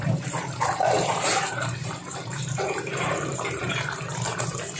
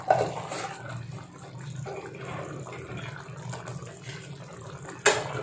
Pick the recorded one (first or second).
second